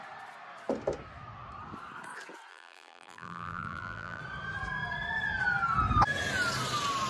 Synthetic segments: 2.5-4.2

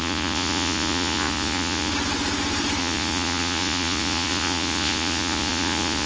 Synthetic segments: 0.0-1.9; 2.8-6.1

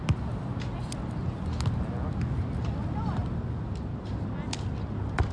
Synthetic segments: none

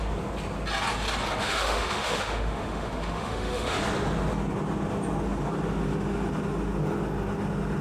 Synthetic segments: 1.4-3.8